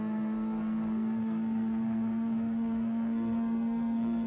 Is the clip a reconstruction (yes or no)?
yes